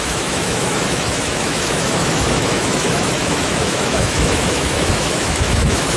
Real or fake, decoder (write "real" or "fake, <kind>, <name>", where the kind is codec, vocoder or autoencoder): fake, autoencoder, DAC-VAE